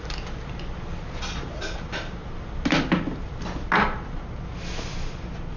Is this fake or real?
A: real